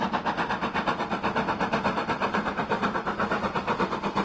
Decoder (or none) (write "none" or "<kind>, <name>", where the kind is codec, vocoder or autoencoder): none